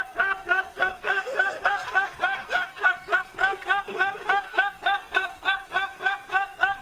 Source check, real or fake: fake